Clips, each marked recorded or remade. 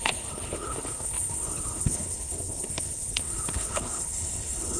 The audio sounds remade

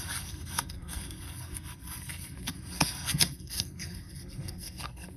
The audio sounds remade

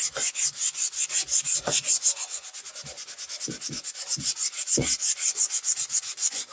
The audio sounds remade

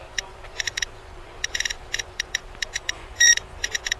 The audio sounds remade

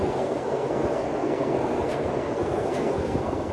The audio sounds remade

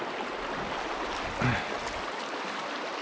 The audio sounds recorded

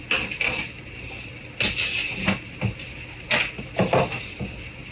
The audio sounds recorded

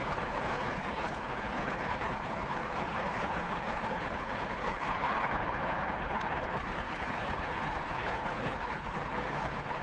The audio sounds remade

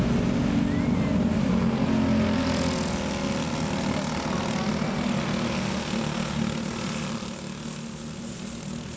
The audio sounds recorded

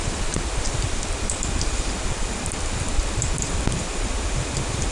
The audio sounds remade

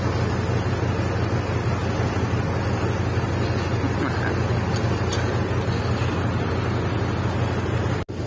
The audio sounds recorded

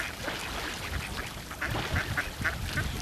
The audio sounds recorded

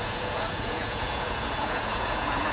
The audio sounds remade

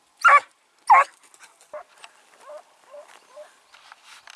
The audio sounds recorded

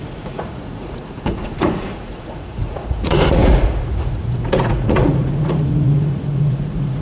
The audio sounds remade